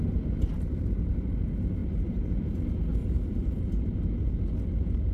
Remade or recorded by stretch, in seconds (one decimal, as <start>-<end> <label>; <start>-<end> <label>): 0.0-1.8 recorded; 1.8-2.4 remade; 2.4-3.0 recorded; 3.0-4.0 remade; 4.0-5.1 recorded